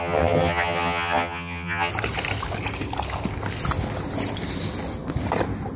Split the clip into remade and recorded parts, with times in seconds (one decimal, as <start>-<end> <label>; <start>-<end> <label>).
0.0-1.9 remade; 1.9-5.8 recorded